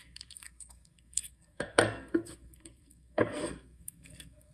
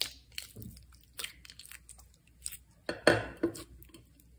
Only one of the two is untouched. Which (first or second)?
second